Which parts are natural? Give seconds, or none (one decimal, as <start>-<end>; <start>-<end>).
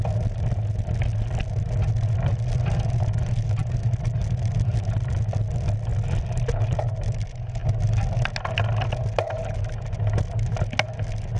0.0-11.4